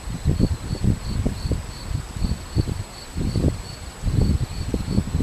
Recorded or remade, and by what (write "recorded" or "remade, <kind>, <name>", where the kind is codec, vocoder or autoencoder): recorded